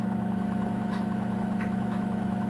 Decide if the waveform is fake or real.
fake